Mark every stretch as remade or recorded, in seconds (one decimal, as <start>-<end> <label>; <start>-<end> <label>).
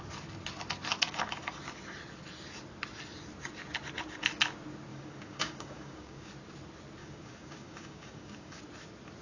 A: 0.0-4.9 recorded; 4.9-6.3 remade; 6.3-7.0 recorded; 7.0-8.6 remade; 8.6-9.2 recorded